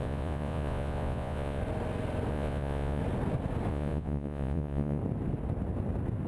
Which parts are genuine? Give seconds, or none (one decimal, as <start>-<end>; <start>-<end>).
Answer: 1.6-2.3; 3.0-3.7; 5.0-6.3